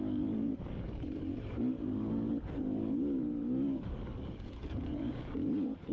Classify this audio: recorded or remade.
remade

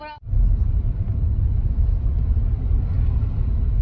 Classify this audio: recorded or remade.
recorded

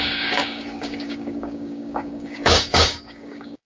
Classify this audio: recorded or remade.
remade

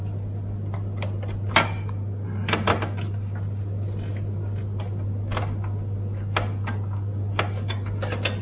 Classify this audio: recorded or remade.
recorded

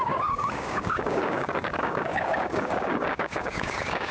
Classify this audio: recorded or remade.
remade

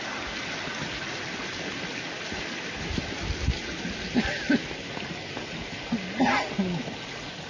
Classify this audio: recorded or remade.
recorded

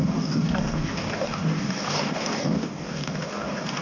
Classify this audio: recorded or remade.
remade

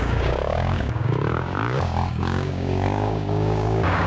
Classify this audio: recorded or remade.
remade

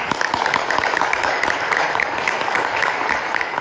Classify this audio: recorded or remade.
remade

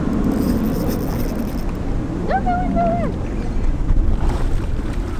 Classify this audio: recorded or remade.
recorded